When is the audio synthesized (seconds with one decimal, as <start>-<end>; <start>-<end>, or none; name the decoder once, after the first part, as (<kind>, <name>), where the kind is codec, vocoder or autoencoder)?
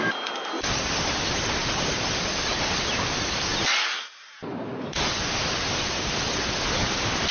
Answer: none